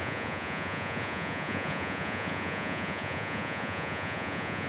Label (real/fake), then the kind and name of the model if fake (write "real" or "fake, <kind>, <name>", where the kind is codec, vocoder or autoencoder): fake, vocoder, Vocos